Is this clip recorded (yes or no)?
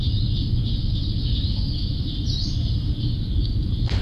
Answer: yes